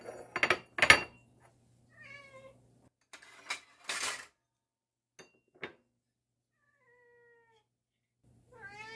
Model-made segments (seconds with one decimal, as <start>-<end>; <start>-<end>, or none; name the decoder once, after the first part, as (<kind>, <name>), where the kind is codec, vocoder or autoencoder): none